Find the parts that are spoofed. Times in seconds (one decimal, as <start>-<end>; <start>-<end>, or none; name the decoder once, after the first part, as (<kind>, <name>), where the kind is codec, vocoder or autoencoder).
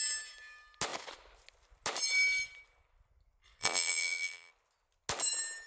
3.6-4.5 (vocoder, BigVGAN v2)